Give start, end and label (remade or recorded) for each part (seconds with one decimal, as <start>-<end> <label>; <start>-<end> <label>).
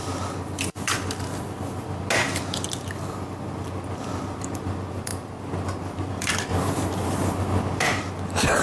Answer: 0.0-4.0 recorded; 4.0-5.1 remade; 5.1-6.1 recorded; 6.1-6.5 remade; 6.5-7.8 recorded; 7.8-8.6 remade